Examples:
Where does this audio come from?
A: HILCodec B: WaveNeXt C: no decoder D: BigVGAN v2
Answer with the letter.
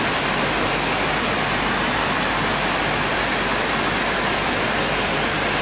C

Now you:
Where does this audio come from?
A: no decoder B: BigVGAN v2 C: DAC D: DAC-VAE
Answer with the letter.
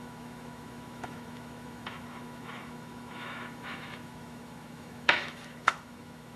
D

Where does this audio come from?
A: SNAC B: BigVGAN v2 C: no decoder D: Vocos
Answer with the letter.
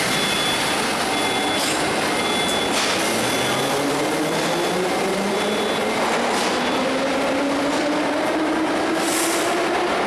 C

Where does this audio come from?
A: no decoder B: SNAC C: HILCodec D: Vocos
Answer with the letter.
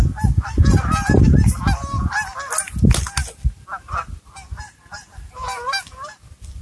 A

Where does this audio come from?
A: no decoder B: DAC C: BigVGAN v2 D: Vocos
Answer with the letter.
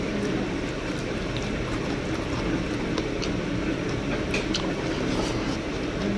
A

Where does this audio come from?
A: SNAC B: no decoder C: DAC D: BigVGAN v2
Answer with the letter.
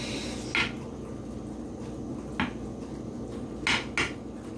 B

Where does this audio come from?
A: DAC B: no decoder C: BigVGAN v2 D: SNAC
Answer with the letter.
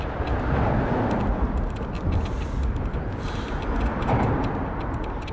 B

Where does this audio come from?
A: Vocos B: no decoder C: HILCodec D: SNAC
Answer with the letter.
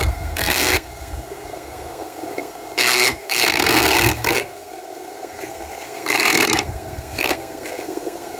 D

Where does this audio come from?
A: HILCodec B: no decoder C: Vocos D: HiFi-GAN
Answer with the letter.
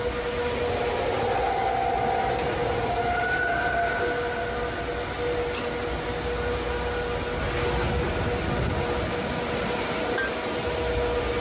B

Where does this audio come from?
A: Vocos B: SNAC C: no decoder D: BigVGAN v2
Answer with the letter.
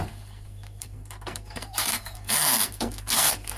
B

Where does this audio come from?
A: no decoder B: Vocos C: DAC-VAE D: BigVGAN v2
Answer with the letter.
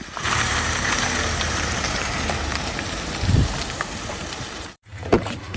D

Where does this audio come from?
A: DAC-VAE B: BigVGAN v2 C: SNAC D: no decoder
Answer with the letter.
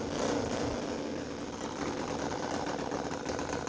D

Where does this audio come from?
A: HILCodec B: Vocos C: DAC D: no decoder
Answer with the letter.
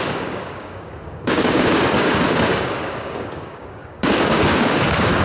C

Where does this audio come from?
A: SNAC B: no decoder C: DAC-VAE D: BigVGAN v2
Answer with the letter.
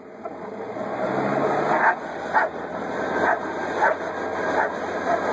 B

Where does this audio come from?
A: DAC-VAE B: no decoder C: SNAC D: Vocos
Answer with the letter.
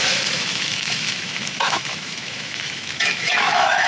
A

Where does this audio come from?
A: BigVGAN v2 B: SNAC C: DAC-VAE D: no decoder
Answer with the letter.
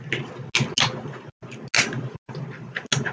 D